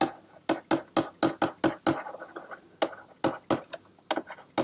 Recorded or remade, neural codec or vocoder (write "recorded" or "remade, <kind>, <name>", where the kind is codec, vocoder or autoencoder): recorded